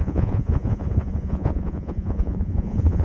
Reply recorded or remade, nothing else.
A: remade